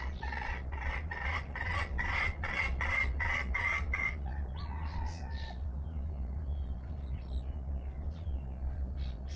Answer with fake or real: fake